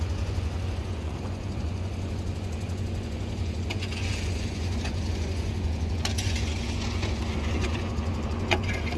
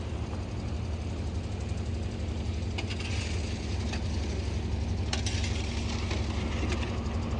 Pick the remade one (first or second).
first